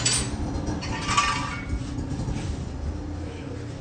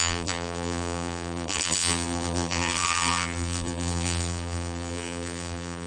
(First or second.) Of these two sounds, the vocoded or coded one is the second